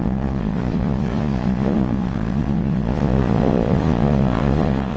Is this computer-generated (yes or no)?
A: yes